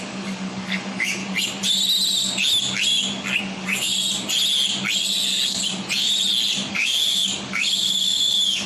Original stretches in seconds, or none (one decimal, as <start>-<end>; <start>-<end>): 1.2-3.4; 3.9-6.7